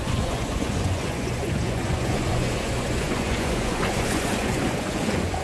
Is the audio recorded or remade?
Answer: remade